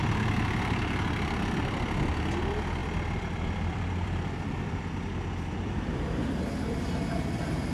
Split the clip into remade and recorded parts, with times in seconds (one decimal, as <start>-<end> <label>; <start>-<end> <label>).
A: 0.0-1.6 remade; 1.6-2.8 recorded; 2.8-7.7 remade